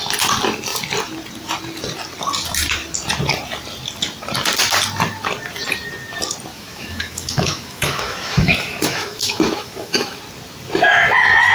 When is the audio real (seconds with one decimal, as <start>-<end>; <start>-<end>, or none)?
0.0-6.5; 10.2-11.5